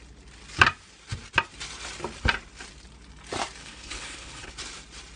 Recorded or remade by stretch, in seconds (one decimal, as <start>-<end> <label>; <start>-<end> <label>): 0.0-3.6 recorded; 3.6-4.5 remade; 4.5-5.2 recorded